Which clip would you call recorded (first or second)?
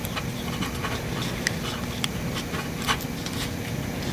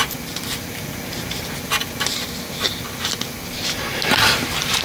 first